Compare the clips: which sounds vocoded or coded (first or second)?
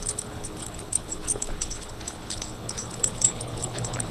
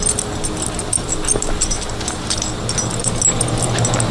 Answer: first